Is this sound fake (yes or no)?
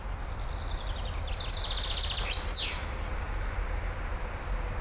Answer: no